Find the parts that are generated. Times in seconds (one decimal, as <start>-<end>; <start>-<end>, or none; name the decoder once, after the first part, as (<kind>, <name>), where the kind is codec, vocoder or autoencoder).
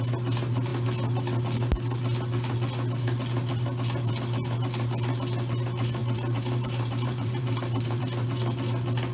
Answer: 6.0-8.0 (vocoder, BigVGAN v2)